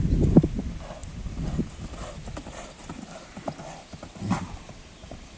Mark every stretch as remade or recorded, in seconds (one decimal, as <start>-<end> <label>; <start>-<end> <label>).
0.0-5.4 recorded